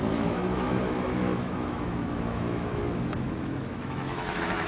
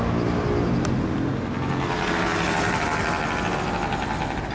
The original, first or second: second